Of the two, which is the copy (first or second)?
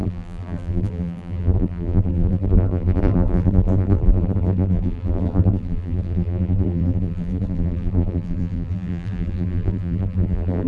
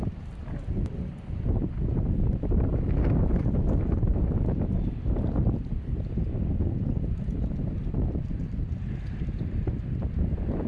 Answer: first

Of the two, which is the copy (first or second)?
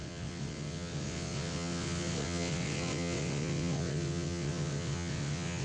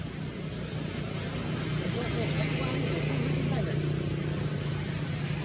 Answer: first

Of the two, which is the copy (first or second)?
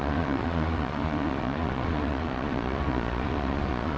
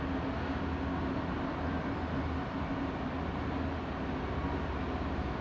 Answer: first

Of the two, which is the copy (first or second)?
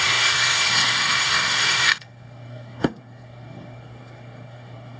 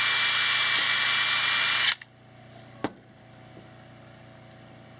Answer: first